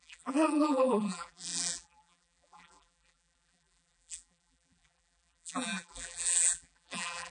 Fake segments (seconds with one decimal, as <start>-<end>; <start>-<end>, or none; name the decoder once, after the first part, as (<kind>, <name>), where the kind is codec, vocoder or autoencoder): 0.0-7.3 (vocoder, BigVGAN v2)